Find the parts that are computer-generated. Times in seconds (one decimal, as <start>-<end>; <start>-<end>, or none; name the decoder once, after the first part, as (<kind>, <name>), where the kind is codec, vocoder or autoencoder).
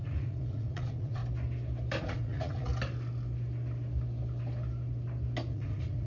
0.0-1.2 (vocoder, Vocos); 2.0-2.7; 5.5-6.1